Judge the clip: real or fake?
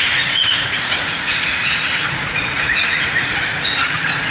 fake